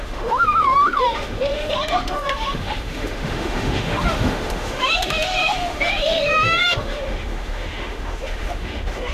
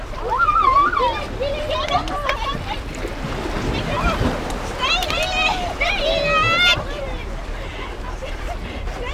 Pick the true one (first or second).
second